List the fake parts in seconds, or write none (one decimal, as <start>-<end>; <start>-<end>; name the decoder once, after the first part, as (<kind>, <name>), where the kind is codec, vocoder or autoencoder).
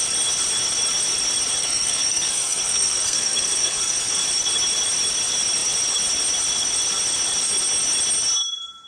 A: 1.6-4.2 (codec, SNAC)